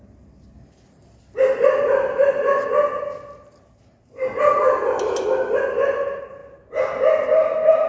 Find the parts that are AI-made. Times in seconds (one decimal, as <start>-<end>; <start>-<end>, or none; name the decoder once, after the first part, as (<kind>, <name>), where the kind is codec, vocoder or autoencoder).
none